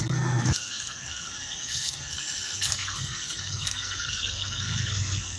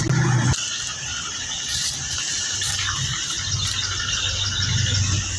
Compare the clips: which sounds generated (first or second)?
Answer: first